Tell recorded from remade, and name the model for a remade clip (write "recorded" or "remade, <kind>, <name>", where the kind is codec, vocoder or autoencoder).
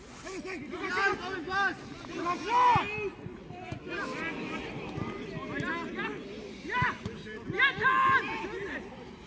recorded